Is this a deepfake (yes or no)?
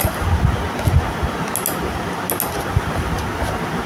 no